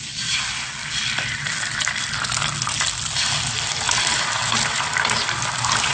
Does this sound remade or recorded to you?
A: recorded